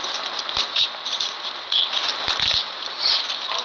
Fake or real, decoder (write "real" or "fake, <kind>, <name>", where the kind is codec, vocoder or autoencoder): real